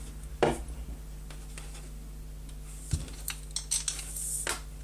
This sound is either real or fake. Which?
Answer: real